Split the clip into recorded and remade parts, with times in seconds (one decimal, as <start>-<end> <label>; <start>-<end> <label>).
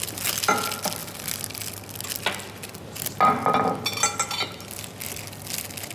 0.0-5.9 recorded